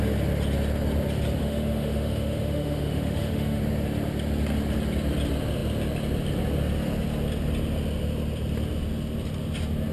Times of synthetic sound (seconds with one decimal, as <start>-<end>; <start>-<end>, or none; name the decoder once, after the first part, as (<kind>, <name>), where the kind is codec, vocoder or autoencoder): 1.4-3.6 (autoencoder, DAC-VAE)